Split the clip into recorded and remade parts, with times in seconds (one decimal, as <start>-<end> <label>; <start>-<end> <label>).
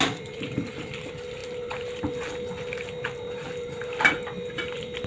0.0-5.1 recorded